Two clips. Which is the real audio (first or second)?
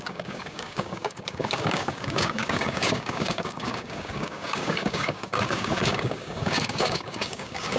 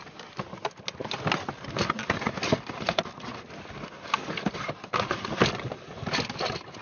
second